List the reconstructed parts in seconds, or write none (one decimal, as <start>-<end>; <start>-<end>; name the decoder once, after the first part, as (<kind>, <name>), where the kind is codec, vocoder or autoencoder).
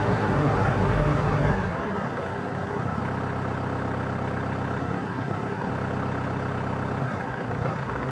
0.0-3.0 (codec, SNAC); 4.8-5.7; 7.0-8.1